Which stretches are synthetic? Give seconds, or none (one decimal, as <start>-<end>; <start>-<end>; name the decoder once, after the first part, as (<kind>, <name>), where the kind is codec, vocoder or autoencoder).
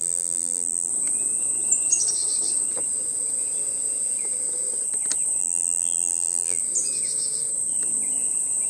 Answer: 0.0-0.9 (vocoder, BigVGAN v2); 5.4-6.6